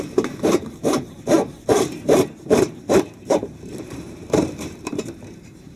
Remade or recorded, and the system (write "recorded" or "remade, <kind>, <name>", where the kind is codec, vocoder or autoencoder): remade, vocoder, BigVGAN v2